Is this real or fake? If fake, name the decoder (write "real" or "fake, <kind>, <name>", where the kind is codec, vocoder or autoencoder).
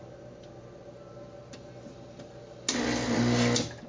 real